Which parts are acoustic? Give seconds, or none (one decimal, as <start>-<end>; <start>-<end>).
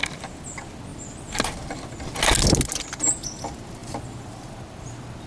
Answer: 0.0-3.8; 4.5-5.3